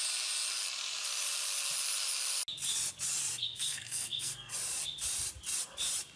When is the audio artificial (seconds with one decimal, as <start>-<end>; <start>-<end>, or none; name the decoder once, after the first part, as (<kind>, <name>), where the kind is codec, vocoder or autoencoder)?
3.4-4.5 (codec, SNAC)